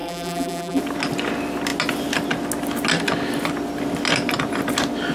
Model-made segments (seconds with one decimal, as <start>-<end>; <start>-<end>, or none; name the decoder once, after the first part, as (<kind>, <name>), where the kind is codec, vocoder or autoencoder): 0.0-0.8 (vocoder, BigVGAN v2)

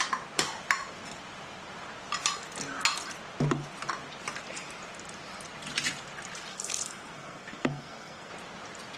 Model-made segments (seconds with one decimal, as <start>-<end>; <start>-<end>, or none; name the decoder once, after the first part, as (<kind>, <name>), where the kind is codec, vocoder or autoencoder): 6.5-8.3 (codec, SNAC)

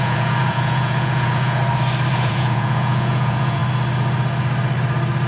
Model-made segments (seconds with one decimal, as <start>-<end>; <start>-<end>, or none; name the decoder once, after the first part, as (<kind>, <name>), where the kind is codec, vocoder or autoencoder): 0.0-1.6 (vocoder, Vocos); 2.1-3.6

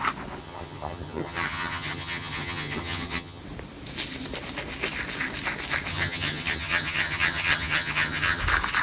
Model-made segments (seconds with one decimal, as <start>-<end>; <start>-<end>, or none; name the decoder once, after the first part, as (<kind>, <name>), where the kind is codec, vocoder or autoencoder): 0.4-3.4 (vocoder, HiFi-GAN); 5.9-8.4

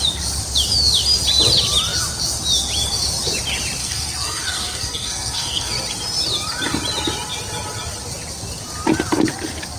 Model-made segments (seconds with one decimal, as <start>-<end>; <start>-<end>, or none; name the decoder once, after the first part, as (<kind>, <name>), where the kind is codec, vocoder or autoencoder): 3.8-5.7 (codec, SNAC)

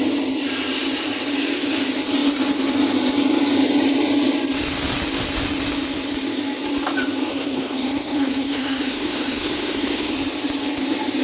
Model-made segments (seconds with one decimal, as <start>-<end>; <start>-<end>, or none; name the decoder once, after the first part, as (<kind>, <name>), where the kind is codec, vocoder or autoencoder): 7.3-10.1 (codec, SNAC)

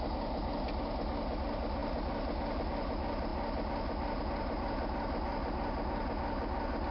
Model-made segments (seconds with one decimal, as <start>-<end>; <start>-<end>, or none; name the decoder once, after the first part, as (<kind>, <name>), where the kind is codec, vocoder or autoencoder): none

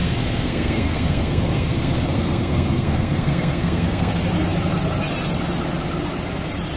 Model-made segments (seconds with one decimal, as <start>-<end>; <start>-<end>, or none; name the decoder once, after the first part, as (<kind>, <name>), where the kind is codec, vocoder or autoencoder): 0.0-4.1 (codec, SNAC)